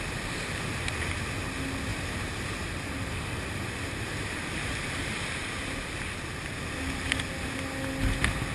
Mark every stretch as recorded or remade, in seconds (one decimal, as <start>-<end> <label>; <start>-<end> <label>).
0.0-1.9 recorded; 1.9-5.5 remade; 5.5-8.5 recorded